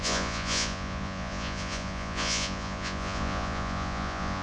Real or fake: fake